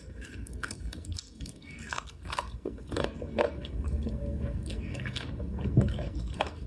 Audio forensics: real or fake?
fake